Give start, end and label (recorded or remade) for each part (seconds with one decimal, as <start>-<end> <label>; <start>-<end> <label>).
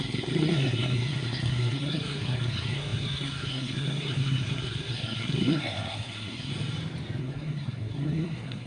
0.0-6.5 remade; 6.5-7.2 recorded; 7.2-8.7 remade